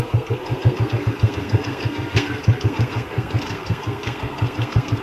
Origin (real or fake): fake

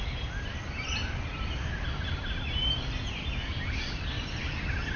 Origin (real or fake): real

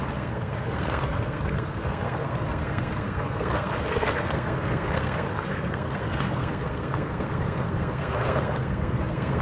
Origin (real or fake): fake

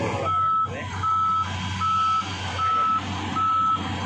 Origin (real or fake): real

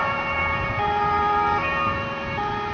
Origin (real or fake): real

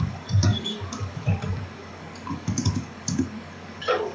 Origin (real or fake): fake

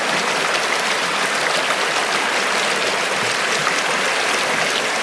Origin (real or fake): real